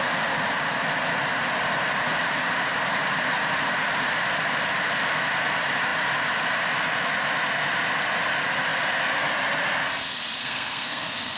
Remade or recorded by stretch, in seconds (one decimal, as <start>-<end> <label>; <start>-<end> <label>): 0.0-10.4 recorded; 10.4-11.4 remade